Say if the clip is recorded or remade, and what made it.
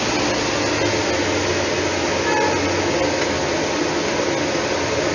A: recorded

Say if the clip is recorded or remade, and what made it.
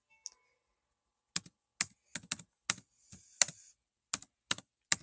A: recorded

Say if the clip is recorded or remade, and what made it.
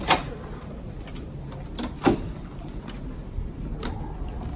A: recorded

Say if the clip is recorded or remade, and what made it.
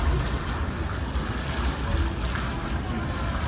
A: recorded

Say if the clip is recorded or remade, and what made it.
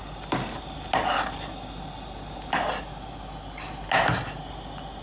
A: recorded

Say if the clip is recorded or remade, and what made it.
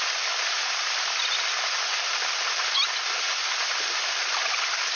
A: recorded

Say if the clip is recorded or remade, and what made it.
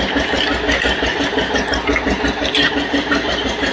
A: recorded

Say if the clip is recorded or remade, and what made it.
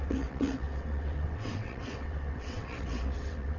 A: remade, vocoder, WaveNeXt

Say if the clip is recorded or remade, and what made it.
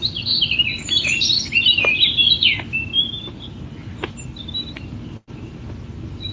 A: recorded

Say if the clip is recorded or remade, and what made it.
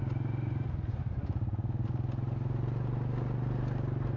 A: recorded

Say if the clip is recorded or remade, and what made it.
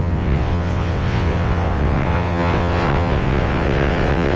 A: remade, vocoder, WaveNeXt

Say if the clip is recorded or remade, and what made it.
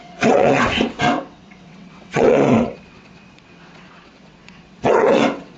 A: remade, vocoder, WaveNeXt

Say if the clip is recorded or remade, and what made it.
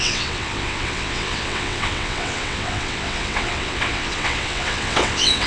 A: remade, vocoder, WaveNeXt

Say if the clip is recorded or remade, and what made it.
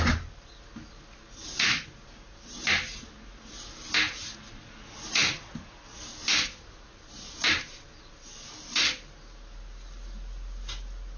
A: recorded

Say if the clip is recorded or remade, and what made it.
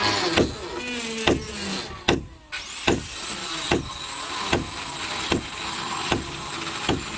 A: recorded